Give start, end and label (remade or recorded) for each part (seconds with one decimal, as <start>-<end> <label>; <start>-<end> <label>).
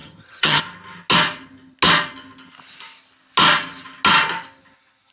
0.0-0.6 remade; 0.6-5.1 recorded